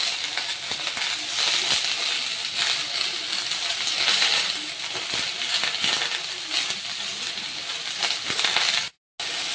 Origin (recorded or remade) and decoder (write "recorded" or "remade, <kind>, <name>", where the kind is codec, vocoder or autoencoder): recorded